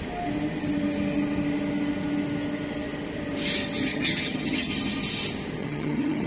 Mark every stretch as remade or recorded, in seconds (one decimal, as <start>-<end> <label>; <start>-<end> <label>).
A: 0.0-3.9 recorded; 3.9-4.7 remade; 4.7-5.6 recorded; 5.6-6.3 remade